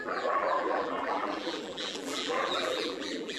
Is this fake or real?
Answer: fake